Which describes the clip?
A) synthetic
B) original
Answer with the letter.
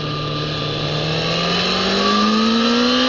B